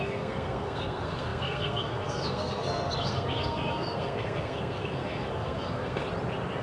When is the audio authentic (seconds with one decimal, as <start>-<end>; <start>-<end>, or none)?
6.0-6.6